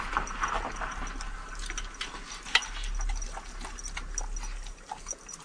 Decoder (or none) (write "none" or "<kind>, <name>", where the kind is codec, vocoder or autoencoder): none